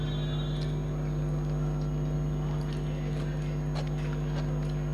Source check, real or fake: real